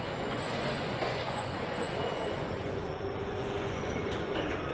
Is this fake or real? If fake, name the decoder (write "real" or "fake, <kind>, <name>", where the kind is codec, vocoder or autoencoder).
fake, vocoder, Vocos